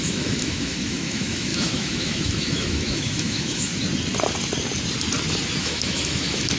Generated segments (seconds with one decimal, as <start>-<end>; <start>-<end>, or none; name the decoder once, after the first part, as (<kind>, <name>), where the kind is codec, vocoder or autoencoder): 0.0-3.7 (autoencoder, DAC-VAE); 5.6-6.6